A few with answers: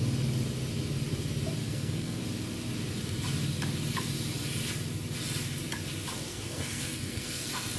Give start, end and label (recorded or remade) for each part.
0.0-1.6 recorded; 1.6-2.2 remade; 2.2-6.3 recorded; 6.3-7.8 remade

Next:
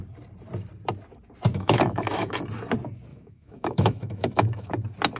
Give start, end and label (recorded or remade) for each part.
0.0-1.5 recorded; 1.5-2.3 remade; 2.3-3.1 recorded; 3.1-4.7 remade; 4.7-5.2 recorded

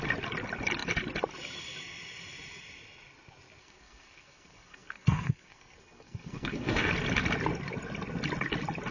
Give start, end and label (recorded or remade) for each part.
0.0-3.6 recorded; 3.6-6.9 remade; 6.9-8.9 recorded

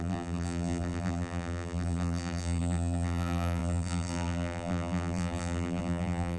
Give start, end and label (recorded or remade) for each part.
0.0-6.4 remade

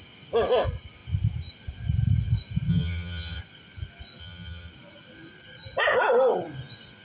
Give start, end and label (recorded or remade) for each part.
0.0-2.7 recorded; 2.7-3.4 remade; 3.4-4.2 recorded; 4.2-4.7 remade; 4.7-7.0 recorded

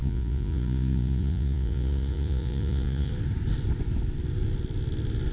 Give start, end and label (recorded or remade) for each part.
0.0-3.1 remade; 3.1-5.3 recorded

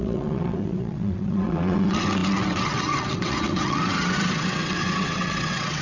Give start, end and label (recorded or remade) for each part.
0.0-5.8 remade

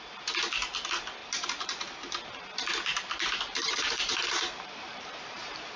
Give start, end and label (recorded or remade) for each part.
0.0-1.2 recorded; 1.2-2.0 remade; 2.0-2.9 recorded; 2.9-5.8 remade